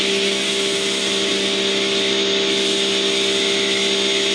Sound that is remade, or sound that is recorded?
recorded